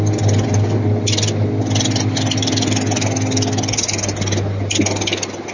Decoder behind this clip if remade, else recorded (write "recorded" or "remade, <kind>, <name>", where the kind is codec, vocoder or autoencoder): recorded